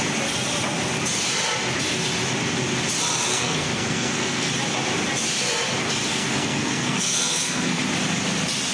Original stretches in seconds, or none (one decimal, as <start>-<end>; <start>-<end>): 0.0-3.3; 4.5-6.1; 7.8-8.7